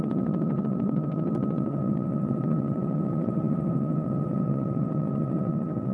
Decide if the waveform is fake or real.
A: fake